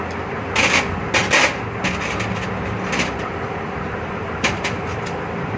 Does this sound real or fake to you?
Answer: real